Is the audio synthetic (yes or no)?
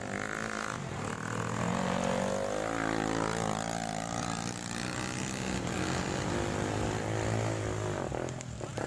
no